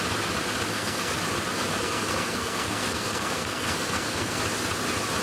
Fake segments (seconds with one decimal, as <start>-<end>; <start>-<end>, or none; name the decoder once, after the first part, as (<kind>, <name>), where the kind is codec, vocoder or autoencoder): 0.7-1.2 (codec, SNAC); 1.7-4.4